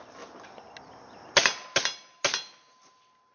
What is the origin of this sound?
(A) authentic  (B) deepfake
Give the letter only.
A